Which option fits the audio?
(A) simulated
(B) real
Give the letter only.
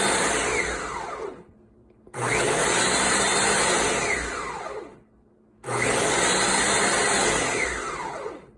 B